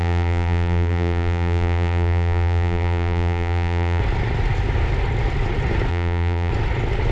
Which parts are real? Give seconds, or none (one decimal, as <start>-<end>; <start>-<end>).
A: 4.0-5.9; 6.5-7.1